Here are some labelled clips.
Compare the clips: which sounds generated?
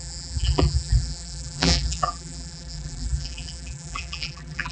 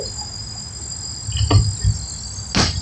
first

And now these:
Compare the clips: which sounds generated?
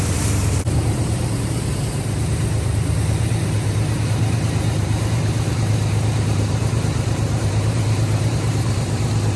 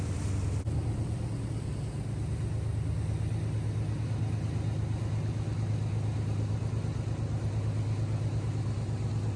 first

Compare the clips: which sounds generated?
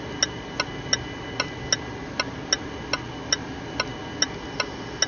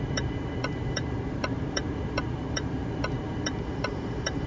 second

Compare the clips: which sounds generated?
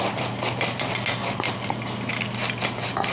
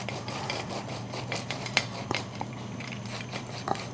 second